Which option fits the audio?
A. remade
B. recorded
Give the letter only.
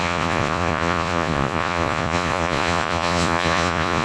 A